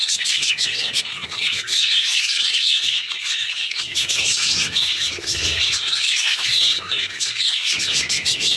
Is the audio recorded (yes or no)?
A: no